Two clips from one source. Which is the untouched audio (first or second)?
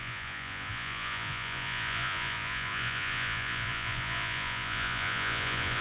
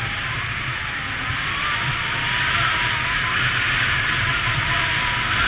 second